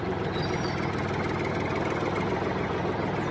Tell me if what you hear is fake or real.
real